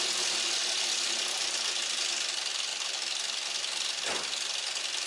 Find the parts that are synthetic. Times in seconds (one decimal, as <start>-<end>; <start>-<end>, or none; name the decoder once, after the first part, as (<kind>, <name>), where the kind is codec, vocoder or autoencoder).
none